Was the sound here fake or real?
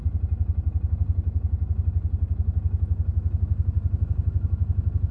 real